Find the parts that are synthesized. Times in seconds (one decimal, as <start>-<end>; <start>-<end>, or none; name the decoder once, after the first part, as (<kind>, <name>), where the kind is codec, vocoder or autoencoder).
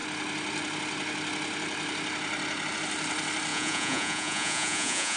3.5-5.2 (vocoder, Vocos)